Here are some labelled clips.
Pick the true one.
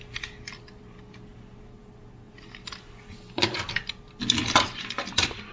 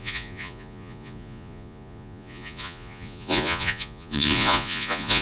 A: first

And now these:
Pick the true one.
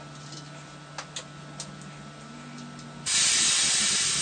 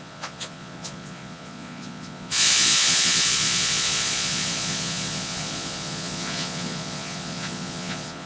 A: first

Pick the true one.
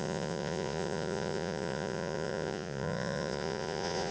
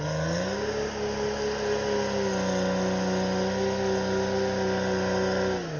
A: second